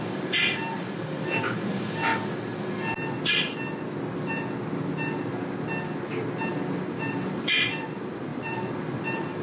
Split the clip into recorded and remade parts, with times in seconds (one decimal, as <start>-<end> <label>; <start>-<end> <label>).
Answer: 0.0-2.1 remade; 2.1-6.5 recorded; 6.5-9.4 remade